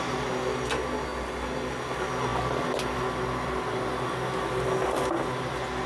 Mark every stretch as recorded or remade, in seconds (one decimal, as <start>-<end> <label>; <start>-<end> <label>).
0.0-5.9 recorded

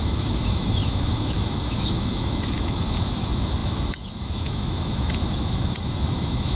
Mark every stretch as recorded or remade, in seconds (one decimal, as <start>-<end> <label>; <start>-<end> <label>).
0.0-6.6 remade

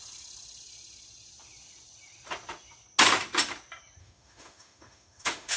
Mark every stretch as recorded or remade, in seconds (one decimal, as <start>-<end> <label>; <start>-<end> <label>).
0.0-4.0 recorded; 4.0-5.6 remade

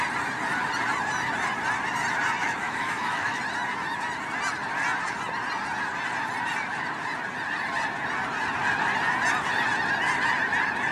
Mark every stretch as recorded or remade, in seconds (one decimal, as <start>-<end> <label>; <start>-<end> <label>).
0.0-2.4 recorded; 2.4-3.4 remade; 3.4-10.9 recorded

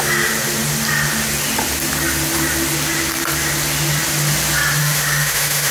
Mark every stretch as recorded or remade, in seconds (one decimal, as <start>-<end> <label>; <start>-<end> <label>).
0.0-4.8 recorded; 4.8-5.7 remade

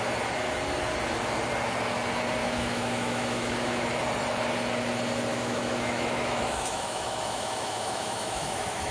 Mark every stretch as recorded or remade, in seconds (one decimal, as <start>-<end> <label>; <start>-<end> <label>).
0.0-2.4 recorded; 2.4-4.0 remade; 4.0-5.3 recorded; 5.3-8.9 remade